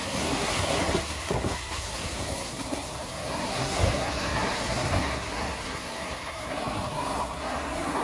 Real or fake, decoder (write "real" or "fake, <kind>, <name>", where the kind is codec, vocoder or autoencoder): fake, codec, SNAC